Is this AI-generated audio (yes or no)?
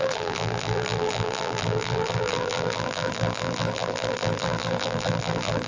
yes